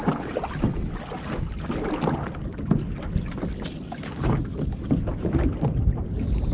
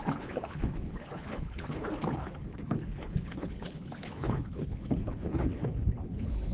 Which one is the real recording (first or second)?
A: first